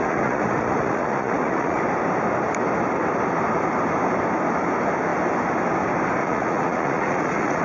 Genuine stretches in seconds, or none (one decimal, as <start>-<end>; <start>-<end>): 1.8-6.2